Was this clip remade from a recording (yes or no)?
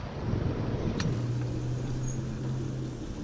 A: no